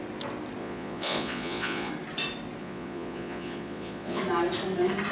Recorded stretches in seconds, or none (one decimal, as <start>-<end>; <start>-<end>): 0.0-0.6; 1.9-2.6; 4.2-5.1